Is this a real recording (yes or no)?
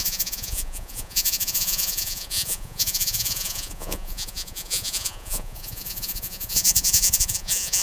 no